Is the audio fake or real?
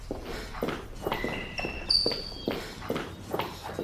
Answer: real